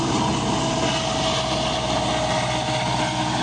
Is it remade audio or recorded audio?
recorded